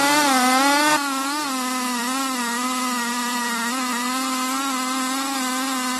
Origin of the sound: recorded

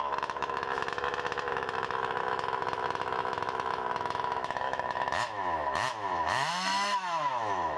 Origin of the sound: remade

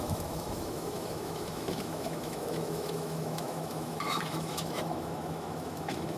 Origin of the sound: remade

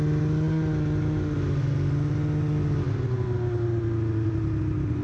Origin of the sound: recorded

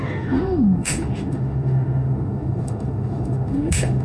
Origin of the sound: remade